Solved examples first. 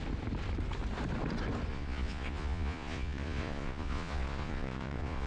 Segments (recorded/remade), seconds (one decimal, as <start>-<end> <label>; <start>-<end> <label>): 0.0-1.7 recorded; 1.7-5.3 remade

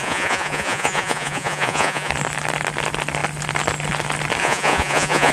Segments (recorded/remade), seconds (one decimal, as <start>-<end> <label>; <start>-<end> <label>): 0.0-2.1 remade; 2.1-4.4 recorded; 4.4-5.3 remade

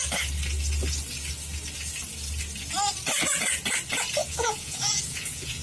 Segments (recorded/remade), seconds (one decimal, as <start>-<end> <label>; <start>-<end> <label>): 0.0-4.2 recorded; 4.2-5.6 remade

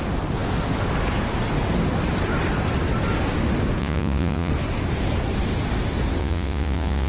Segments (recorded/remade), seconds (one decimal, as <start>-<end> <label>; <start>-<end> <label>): 0.0-3.8 recorded; 3.8-4.5 remade; 4.5-6.2 recorded; 6.2-7.1 remade

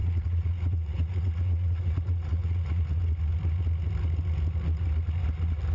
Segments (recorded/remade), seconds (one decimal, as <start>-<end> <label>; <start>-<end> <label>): 0.0-3.0 remade; 3.0-5.7 recorded